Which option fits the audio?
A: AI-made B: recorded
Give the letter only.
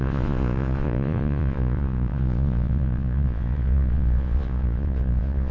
A